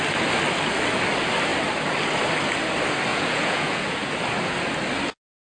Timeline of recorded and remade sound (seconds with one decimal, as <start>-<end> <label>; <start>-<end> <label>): 0.0-3.1 recorded; 3.1-4.1 remade; 4.1-5.4 recorded